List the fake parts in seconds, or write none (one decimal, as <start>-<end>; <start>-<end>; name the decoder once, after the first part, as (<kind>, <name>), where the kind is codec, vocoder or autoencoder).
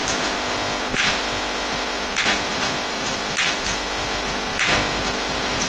2.5-3.6 (vocoder, BigVGAN v2)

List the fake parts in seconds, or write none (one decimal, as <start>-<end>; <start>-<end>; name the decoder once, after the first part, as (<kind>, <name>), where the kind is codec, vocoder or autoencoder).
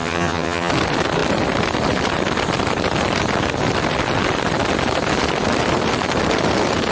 0.0-0.7 (vocoder, HiFi-GAN)